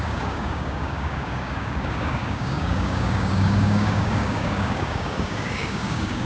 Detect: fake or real fake